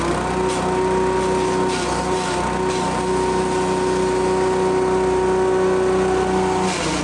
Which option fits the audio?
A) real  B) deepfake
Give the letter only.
A